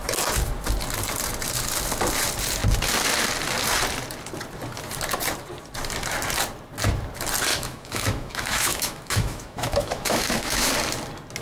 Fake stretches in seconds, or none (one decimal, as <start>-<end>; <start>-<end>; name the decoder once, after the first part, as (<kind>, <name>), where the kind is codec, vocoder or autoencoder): 7.5-10.7 (autoencoder, DAC-VAE)